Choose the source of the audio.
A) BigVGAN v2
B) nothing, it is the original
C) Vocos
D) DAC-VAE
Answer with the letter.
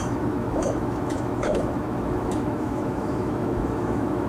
D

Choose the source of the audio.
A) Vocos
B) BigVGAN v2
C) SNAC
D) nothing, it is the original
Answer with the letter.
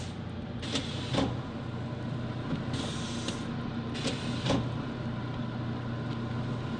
D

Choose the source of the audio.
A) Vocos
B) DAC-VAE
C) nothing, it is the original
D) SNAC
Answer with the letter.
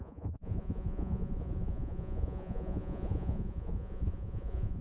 A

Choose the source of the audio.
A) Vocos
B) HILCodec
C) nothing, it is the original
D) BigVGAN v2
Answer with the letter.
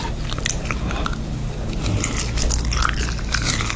C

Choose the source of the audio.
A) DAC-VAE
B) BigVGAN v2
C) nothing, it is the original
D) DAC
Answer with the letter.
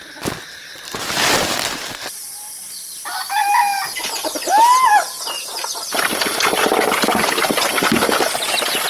C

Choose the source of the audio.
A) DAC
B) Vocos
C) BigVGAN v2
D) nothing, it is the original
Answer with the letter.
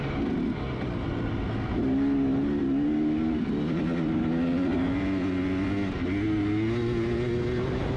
D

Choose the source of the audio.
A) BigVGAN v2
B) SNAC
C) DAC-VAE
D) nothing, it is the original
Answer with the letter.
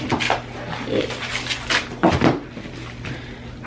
D